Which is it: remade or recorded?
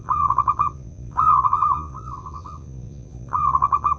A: remade